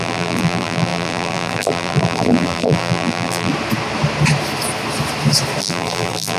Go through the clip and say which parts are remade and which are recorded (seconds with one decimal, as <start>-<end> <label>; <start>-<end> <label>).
0.0-3.5 remade; 3.5-5.6 recorded; 5.6-6.4 remade